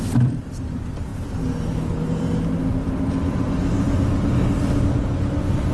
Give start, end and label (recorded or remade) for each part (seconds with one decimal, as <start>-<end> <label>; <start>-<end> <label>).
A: 0.0-5.7 recorded

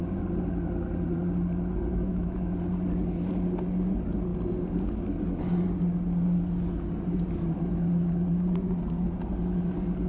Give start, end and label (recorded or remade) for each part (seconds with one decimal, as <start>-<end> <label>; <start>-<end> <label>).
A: 0.0-1.9 recorded; 1.9-2.5 remade; 2.5-10.1 recorded

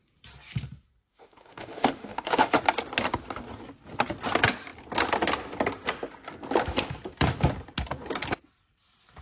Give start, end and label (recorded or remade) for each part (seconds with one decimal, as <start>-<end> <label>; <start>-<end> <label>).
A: 0.0-1.1 recorded; 1.1-2.5 remade; 2.5-9.2 recorded